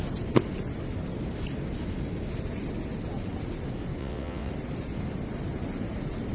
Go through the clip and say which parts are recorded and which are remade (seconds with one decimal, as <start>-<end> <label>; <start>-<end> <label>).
0.0-4.0 recorded; 4.0-4.5 remade; 4.5-6.3 recorded